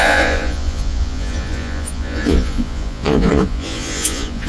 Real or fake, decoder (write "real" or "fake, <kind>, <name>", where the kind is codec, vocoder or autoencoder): fake, vocoder, Vocos